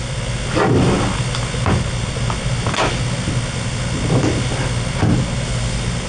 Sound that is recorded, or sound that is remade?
recorded